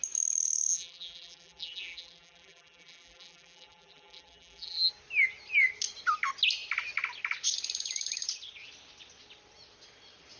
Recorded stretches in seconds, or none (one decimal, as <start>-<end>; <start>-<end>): 0.0-0.7; 4.9-10.4